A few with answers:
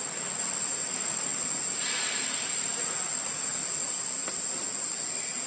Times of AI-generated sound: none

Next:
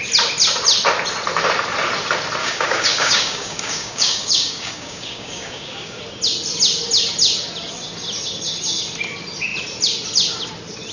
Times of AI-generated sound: 2.4-6.0 (codec, DAC)

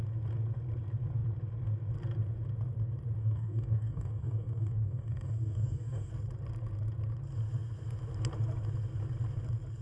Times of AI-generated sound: 3.2-6.1 (codec, DAC)

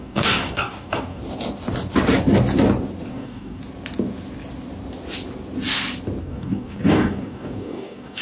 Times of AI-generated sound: 0.0-1.2 (codec, DAC); 3.1-3.6; 6.2-8.2

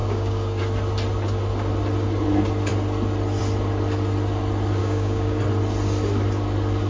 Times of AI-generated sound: 0.0-0.6 (codec, DAC); 4.8-5.4